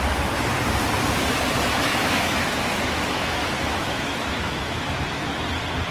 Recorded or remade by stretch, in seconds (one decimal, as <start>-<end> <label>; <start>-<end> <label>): 0.0-1.9 recorded; 1.9-5.4 remade; 5.4-5.9 recorded